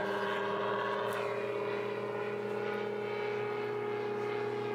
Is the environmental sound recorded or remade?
recorded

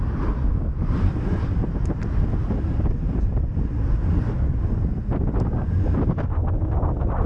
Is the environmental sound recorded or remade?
recorded